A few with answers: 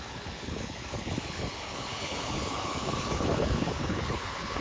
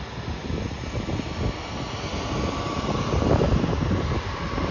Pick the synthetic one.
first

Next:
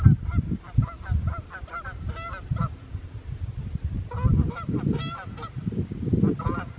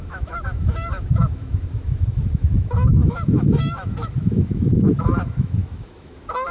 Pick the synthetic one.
second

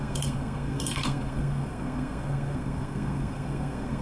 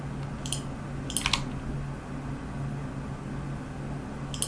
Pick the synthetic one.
first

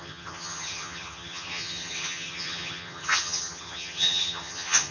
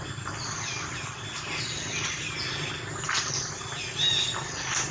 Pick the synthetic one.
first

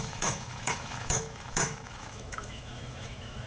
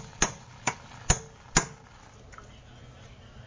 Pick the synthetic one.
first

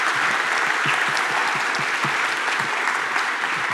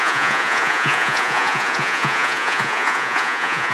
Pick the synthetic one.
second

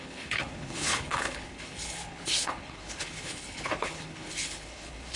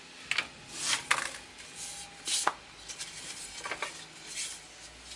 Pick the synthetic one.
first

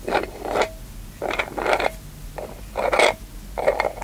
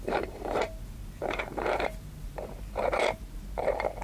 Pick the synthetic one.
second